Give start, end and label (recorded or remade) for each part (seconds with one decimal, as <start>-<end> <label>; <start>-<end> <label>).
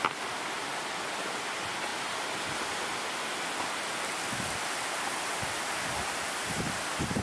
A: 0.0-7.2 recorded